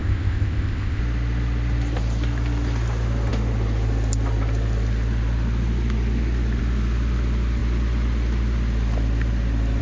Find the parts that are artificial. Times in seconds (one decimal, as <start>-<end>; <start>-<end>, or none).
0.0-1.0